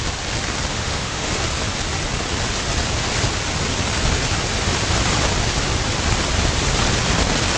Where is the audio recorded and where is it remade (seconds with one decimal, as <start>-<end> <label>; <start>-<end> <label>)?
0.0-0.7 recorded; 0.7-1.3 remade; 1.3-7.6 recorded